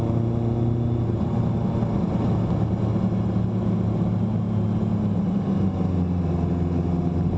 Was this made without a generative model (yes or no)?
yes